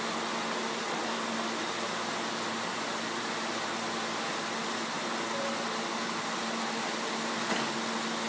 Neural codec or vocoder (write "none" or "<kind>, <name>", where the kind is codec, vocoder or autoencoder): none